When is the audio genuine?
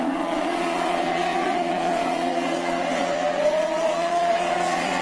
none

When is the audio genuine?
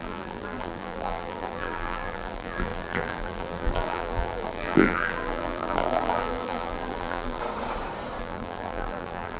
7.4-8.2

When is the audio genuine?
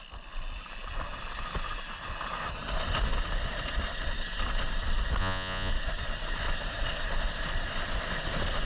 0.0-5.2; 5.7-8.7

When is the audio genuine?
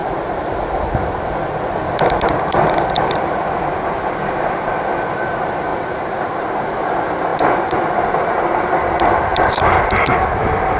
3.0-5.7; 6.5-7.3; 8.3-9.3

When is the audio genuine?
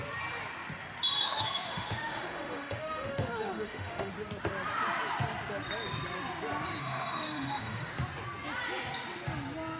0.0-1.2; 4.1-6.8; 7.9-9.8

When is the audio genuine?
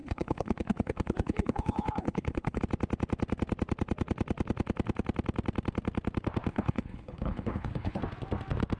2.6-6.5; 8.0-8.8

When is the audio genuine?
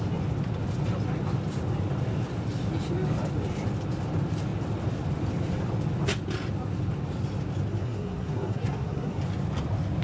0.0-7.7; 9.2-10.0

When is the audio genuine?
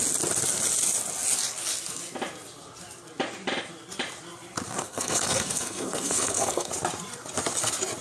0.0-4.8; 6.7-8.0